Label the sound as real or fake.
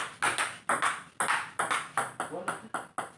real